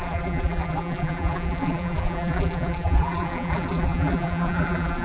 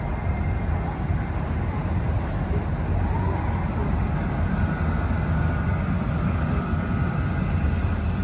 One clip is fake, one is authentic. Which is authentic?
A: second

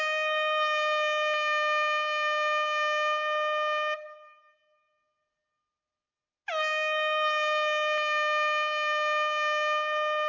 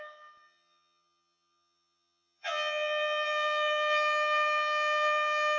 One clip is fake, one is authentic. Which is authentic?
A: first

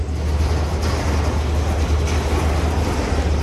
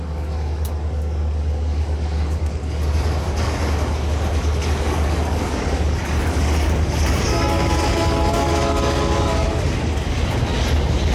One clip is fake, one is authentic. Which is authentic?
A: first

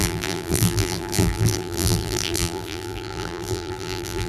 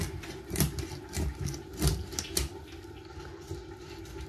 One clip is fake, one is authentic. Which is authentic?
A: second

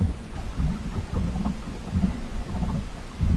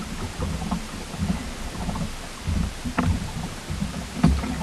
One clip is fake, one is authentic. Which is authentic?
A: second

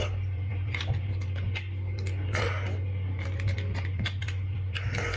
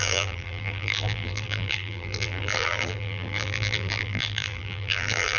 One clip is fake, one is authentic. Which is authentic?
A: first